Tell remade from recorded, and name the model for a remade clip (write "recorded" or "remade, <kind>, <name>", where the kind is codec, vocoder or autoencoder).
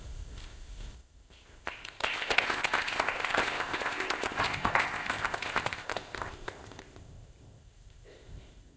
remade, codec, ZipCodec